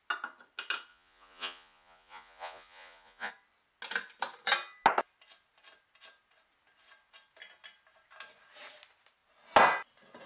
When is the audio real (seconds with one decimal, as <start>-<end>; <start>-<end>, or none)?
0.0-0.9; 3.3-10.3